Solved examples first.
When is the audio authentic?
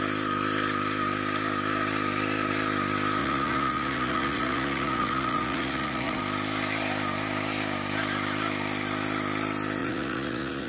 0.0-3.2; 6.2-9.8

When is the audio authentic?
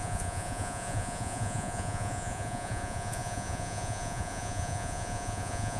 none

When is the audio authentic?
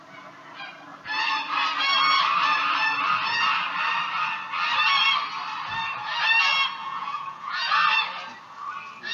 0.0-6.8; 7.8-9.1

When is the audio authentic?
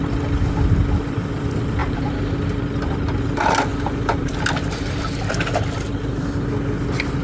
0.0-7.2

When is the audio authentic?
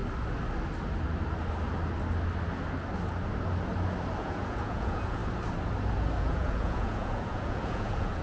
0.0-4.2; 5.2-6.2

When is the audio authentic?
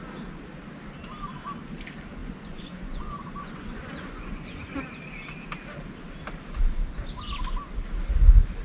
0.0-2.2; 4.8-8.6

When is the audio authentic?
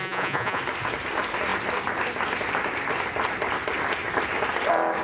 0.6-5.0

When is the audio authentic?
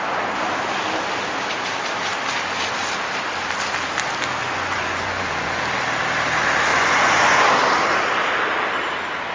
0.0-4.4; 5.6-6.7; 7.5-9.3